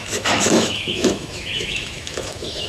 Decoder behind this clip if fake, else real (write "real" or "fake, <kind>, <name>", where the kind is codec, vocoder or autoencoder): fake, autoencoder, DAC-VAE